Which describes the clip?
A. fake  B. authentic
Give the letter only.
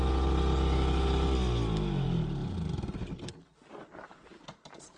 B